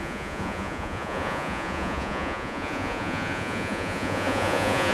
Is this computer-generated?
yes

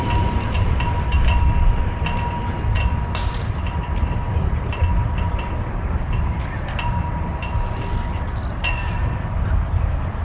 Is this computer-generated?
no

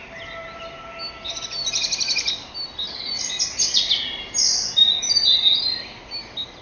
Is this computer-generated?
no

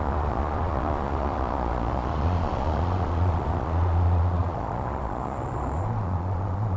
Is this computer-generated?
yes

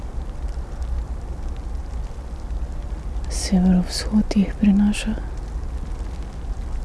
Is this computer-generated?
no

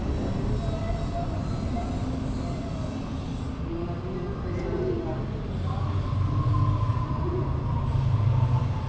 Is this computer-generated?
no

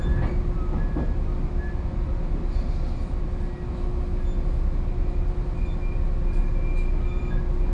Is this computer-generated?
no